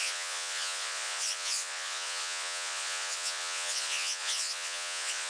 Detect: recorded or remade remade